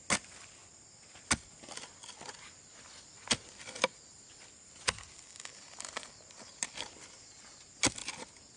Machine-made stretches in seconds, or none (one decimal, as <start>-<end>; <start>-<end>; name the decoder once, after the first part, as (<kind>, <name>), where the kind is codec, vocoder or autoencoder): none